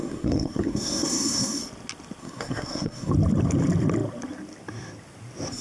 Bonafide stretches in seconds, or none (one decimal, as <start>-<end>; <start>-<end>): 1.6-2.2; 3.1-5.6